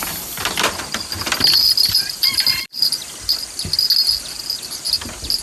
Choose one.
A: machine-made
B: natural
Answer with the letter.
B